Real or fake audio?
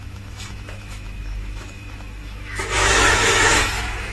fake